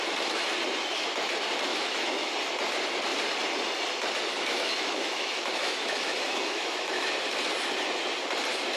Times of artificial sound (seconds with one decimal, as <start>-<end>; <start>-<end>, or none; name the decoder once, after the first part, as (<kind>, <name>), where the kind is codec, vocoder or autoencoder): 1.7-2.3 (autoencoder, DAC-VAE); 4.3-7.1